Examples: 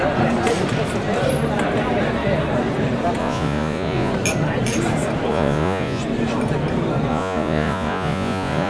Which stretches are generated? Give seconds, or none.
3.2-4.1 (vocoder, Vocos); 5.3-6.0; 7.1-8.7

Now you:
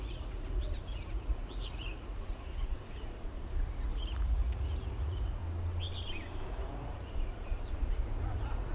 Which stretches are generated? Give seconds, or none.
0.0-5.4 (vocoder, Vocos); 6.5-8.7